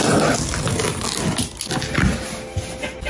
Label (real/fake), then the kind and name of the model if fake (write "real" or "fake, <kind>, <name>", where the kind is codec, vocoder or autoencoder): real